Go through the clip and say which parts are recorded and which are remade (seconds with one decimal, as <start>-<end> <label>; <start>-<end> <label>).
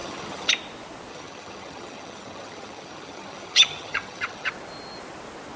0.0-0.5 remade; 0.5-1.1 recorded; 1.1-4.5 remade; 4.5-5.6 recorded